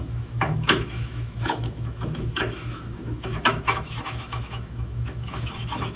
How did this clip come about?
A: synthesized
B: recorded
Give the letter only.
A